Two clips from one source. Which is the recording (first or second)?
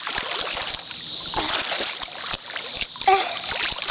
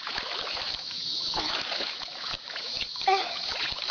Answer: first